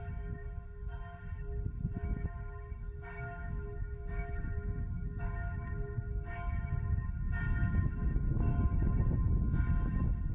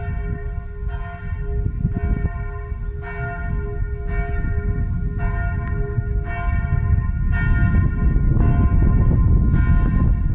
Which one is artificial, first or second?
first